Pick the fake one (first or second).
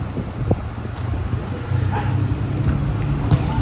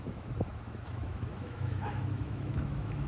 second